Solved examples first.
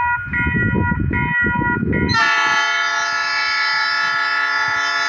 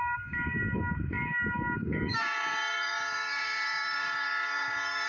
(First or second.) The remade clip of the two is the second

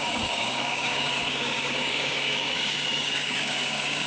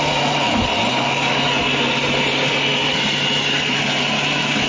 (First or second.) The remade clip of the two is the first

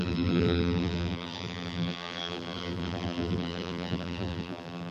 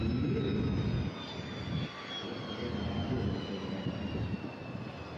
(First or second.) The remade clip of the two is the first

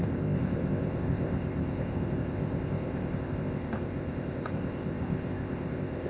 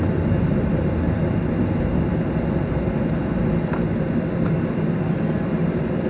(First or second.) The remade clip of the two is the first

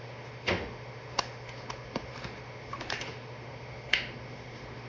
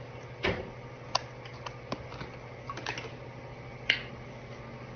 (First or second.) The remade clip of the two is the first